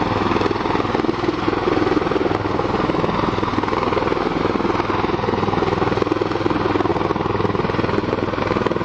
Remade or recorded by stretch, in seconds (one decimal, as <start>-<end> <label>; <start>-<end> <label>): 0.0-8.8 recorded